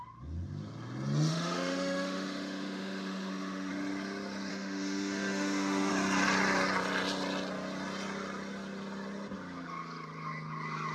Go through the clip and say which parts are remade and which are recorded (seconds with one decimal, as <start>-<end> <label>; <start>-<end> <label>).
0.0-1.3 recorded; 1.3-3.7 remade; 3.7-4.5 recorded; 4.5-5.9 remade; 5.9-10.9 recorded

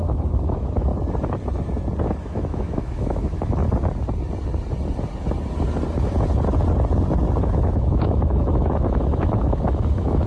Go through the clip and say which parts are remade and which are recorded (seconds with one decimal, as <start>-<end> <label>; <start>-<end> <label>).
0.0-0.9 remade; 0.9-2.2 recorded; 2.2-3.6 remade; 3.6-7.4 recorded; 7.4-10.3 remade